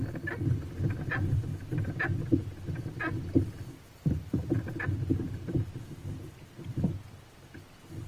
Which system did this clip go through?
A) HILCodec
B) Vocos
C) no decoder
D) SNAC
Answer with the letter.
C